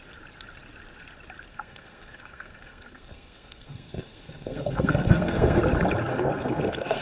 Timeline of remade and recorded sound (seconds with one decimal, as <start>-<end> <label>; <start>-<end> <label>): 0.0-1.5 recorded; 1.5-5.6 remade; 5.6-6.1 recorded; 6.1-7.0 remade